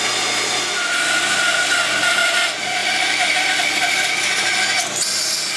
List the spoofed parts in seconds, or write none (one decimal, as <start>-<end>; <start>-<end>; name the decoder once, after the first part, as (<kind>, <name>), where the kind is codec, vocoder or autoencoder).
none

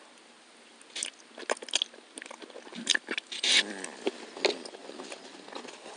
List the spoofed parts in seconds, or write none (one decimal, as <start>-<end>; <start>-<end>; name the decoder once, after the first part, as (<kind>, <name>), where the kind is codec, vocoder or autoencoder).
2.7-3.6 (vocoder, BigVGAN v2); 4.8-5.3

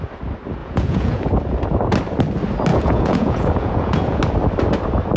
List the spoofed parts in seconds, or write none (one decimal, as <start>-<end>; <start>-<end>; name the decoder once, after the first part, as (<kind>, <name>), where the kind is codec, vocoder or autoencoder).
0.6-1.2 (vocoder, Vocos); 2.7-4.2

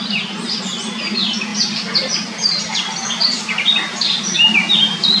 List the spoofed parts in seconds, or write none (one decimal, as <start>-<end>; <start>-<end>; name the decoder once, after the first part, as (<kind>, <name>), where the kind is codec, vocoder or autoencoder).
none

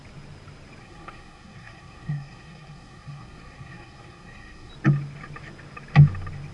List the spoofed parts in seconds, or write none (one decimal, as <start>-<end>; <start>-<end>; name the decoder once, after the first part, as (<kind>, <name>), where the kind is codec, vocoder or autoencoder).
0.8-4.7 (codec, SNAC)

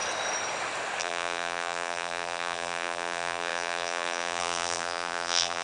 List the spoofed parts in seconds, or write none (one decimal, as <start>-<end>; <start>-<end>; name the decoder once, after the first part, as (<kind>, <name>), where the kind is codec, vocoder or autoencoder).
1.0-5.6 (vocoder, BigVGAN v2)